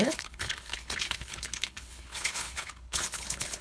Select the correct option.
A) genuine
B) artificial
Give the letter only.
B